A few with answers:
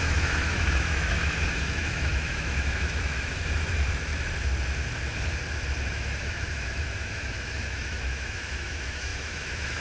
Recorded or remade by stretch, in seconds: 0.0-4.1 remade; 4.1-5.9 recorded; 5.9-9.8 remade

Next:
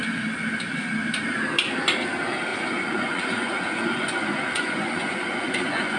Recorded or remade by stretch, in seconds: 0.0-2.5 recorded; 2.5-6.0 remade